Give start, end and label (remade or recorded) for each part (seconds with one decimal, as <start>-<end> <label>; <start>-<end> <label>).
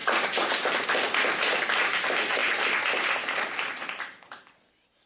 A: 0.0-0.5 remade; 0.5-5.1 recorded